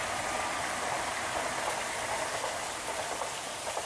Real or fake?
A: real